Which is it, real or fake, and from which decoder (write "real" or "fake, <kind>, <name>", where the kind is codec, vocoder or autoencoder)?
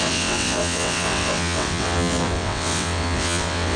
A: fake, vocoder, WaveNeXt